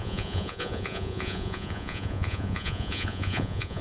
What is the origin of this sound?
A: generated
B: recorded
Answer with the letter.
A